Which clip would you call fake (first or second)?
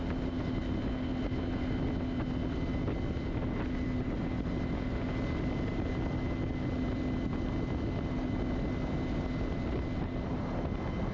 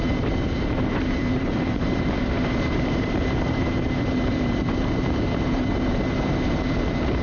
second